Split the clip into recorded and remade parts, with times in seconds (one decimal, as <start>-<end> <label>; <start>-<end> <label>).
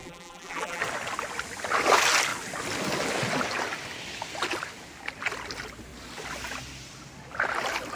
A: 0.0-0.8 remade; 0.8-8.0 recorded